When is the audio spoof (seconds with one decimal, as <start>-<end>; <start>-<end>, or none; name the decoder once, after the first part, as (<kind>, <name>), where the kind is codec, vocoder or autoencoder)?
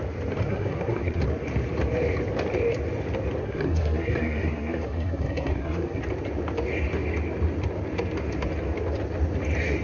0.5-1.2 (codec, SNAC); 3.4-6.0